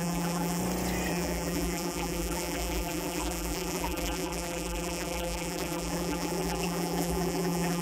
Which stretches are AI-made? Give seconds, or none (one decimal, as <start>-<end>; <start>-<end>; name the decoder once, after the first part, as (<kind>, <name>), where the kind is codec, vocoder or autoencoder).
0.0-0.6 (vocoder, BigVGAN v2); 1.1-7.8